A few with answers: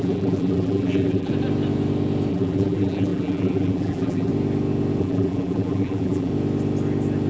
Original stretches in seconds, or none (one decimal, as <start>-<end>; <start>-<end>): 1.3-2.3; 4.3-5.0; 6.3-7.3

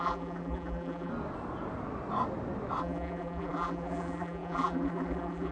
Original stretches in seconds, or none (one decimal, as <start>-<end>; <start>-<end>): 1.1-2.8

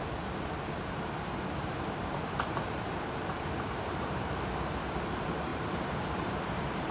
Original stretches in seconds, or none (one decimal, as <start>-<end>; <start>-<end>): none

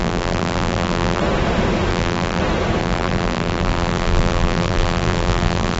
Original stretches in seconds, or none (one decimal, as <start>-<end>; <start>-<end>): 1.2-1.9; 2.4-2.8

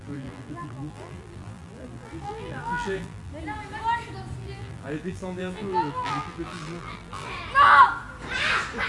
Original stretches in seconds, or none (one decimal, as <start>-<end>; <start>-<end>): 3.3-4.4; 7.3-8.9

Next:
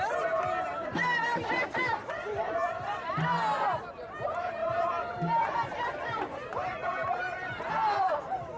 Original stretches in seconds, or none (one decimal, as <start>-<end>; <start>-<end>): none